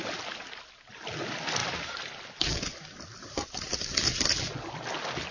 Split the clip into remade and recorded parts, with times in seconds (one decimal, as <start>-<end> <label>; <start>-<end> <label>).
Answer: 0.0-5.3 recorded